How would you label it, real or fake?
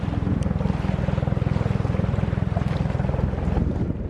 real